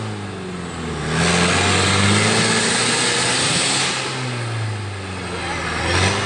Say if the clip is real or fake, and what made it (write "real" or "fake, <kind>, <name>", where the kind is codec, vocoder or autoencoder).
real